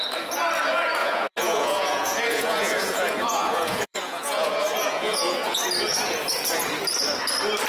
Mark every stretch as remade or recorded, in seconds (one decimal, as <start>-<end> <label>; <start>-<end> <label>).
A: 0.0-1.0 recorded; 1.0-5.6 remade; 5.6-7.7 recorded